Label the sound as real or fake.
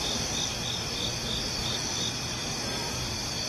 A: real